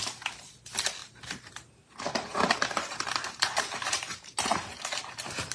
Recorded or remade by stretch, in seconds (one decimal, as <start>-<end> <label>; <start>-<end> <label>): 0.0-1.0 recorded; 1.0-1.5 remade; 1.5-2.3 recorded; 2.3-5.0 remade; 5.0-5.5 recorded